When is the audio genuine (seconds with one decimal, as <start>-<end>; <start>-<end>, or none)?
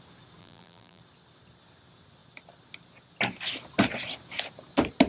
0.0-0.4; 1.0-5.1